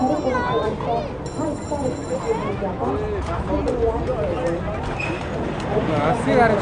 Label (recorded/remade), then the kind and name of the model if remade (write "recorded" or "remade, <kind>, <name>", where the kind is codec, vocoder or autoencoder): recorded